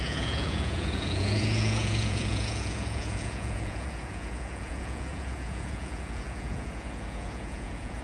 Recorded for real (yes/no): no